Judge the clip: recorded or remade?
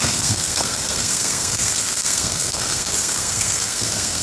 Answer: remade